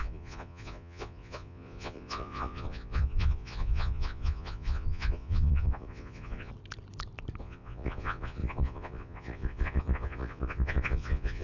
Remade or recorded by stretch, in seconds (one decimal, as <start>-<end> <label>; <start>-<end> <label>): 0.0-6.5 remade; 6.5-7.4 recorded; 7.4-11.4 remade